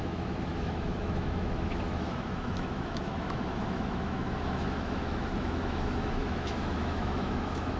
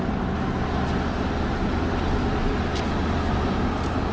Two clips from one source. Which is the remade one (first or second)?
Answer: first